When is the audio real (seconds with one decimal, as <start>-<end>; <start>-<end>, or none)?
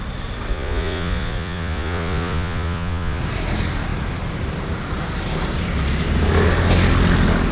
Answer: 0.0-0.5; 3.2-7.5